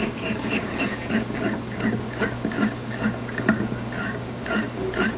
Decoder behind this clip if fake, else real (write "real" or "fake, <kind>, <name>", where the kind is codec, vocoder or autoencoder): fake, codec, DAC